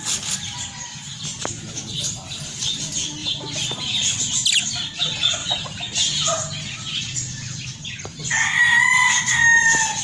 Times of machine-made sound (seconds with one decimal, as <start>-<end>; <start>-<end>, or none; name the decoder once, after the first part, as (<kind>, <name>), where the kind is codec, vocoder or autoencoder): 3.2-4.2 (vocoder, BigVGAN v2); 5.4-6.3